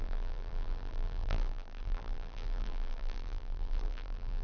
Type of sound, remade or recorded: remade